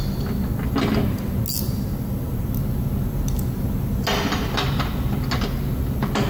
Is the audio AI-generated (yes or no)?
no